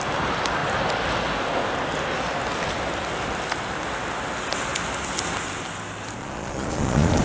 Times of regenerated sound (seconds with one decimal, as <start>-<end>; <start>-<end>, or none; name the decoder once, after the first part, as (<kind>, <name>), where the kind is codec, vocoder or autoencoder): 6.2-7.2 (vocoder, Vocos)